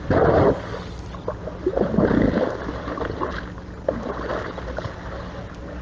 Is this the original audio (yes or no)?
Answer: yes